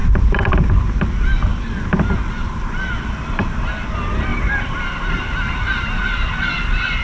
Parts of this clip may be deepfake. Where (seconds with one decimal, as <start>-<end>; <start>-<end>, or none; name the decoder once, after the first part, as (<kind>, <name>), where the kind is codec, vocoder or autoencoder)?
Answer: 0.0-0.9 (vocoder, BigVGAN v2); 4.3-4.9